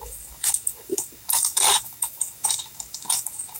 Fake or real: fake